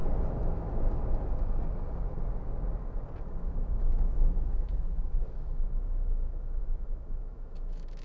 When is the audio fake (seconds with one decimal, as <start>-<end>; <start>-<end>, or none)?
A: 3.4-8.0